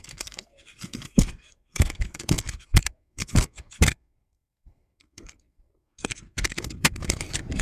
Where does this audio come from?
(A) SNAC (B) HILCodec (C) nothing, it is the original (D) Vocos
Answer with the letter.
A